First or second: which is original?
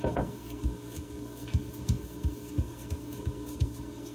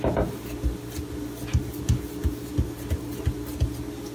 second